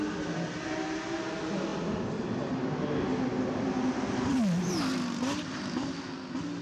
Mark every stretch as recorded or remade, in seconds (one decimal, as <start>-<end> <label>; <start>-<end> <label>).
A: 0.0-6.6 recorded